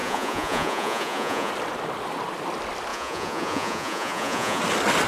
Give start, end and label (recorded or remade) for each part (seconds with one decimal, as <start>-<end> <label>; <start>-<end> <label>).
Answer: 0.0-1.5 remade; 1.5-2.9 recorded; 2.9-4.6 remade; 4.6-5.1 recorded

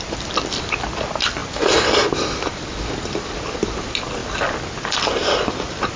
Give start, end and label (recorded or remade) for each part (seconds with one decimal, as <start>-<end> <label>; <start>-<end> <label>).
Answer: 0.0-6.0 recorded

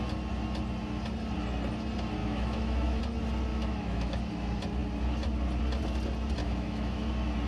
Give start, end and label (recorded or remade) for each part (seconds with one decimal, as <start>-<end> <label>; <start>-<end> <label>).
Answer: 0.0-2.2 recorded; 2.2-3.0 remade; 3.0-3.5 recorded; 3.5-4.2 remade; 4.2-6.4 recorded; 6.4-7.1 remade; 7.1-7.5 recorded

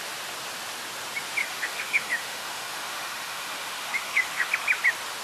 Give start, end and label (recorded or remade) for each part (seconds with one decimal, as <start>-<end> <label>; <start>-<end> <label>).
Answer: 0.0-1.4 recorded; 1.4-4.5 remade; 4.5-5.2 recorded

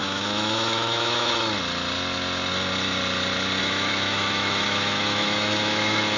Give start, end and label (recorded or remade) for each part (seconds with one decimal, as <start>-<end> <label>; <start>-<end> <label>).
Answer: 0.0-1.3 remade; 1.3-3.6 recorded; 3.6-6.2 remade

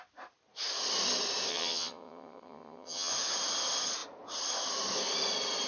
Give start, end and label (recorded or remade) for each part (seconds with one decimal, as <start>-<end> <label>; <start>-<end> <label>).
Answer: 0.0-1.5 recorded; 1.5-3.1 remade; 3.1-5.7 recorded

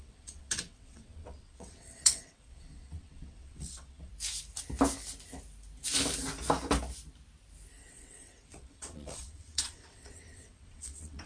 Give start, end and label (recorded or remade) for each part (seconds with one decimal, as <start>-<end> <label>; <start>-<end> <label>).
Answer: 0.0-4.1 remade; 4.1-7.8 recorded; 7.8-11.3 remade

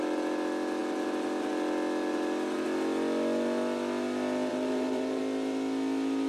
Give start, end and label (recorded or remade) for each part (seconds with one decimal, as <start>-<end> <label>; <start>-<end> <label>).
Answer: 0.0-4.5 recorded; 4.5-5.2 remade; 5.2-6.3 recorded